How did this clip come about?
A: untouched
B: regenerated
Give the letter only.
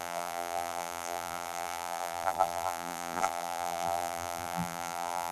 B